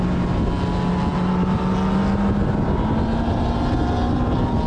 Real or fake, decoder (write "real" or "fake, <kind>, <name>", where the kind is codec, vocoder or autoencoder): real